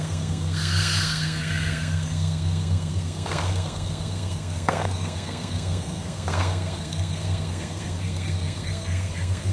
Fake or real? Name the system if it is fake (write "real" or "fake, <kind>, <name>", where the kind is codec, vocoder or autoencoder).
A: fake, codec, SNAC